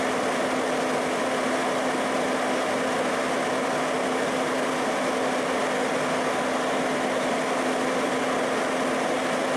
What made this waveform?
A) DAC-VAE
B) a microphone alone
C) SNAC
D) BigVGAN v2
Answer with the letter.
B